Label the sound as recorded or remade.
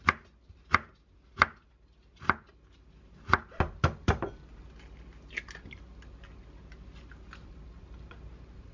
recorded